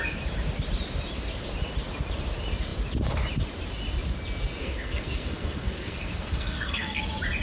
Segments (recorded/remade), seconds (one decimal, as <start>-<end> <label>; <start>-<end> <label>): 0.0-4.6 recorded; 4.6-7.0 remade; 7.0-7.4 recorded